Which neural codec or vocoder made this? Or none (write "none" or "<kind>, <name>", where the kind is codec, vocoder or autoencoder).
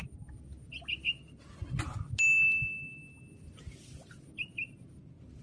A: none